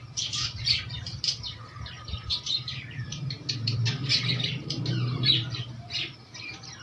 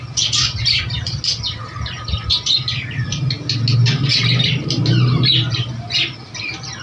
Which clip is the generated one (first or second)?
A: first